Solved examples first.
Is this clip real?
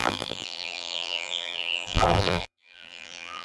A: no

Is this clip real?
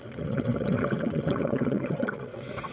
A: no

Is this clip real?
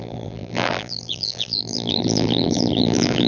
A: no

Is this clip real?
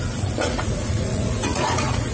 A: no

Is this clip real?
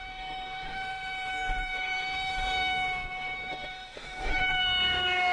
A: no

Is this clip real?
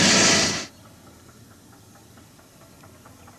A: yes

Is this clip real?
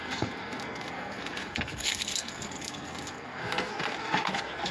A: no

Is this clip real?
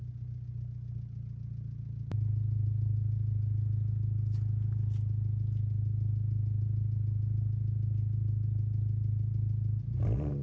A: yes